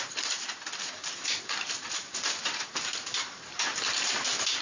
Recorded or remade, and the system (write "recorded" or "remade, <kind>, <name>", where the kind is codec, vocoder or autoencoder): remade, vocoder, BigVGAN v2